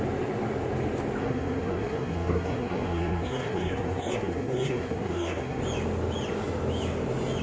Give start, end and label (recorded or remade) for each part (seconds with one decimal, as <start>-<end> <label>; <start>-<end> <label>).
0.0-1.2 recorded; 1.2-5.6 remade; 5.6-7.4 recorded